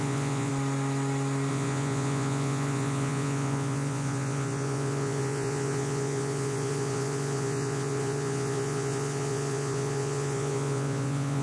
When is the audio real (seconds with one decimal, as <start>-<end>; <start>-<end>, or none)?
0.5-1.5